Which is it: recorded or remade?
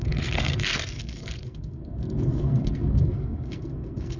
remade